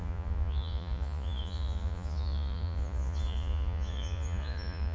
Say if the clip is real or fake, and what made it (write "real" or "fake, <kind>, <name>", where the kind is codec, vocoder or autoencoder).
fake, vocoder, Vocos